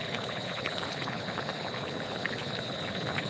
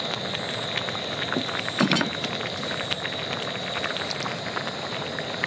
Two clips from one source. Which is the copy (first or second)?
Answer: first